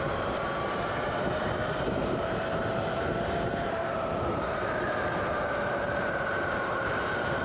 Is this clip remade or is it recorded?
remade